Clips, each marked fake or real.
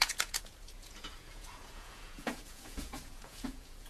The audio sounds fake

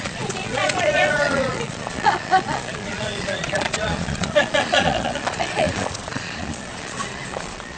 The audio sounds fake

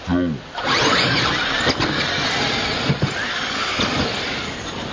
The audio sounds real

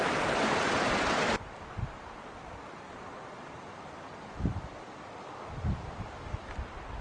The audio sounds real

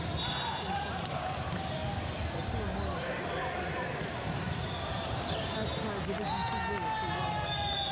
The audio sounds real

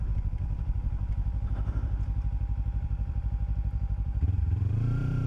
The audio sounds fake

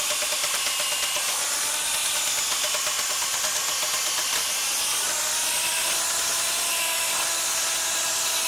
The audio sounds real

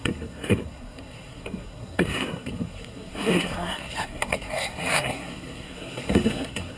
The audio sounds fake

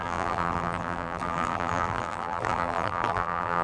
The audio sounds fake